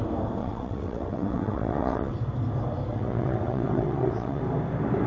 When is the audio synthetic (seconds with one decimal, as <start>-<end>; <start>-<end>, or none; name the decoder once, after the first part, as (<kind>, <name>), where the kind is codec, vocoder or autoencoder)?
0.4-2.1 (vocoder, WaveNeXt); 2.9-4.4